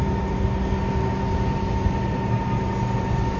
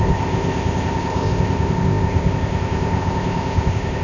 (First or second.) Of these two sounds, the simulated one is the second